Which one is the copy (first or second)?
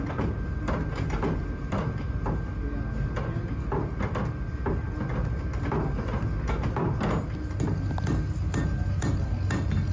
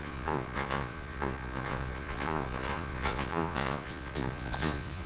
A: second